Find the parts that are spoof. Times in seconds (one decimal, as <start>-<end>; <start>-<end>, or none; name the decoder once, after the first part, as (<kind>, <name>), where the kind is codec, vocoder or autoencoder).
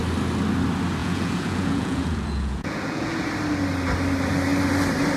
1.0-3.3 (vocoder, Vocos)